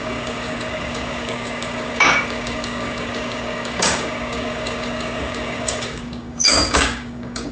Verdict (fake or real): fake